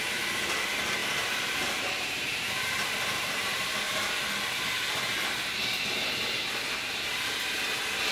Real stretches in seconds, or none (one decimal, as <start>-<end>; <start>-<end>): 0.0-1.0; 4.2-8.1